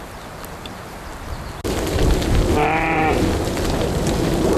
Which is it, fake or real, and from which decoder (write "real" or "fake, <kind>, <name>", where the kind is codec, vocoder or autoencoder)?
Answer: real